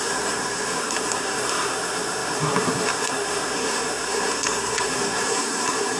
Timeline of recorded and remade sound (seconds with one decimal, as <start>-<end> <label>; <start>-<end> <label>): 0.0-6.0 remade